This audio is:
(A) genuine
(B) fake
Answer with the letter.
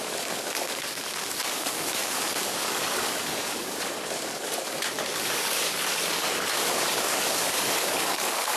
B